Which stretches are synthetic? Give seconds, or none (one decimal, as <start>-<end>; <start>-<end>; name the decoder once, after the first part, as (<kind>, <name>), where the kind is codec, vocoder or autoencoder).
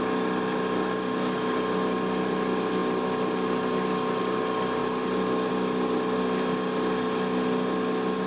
none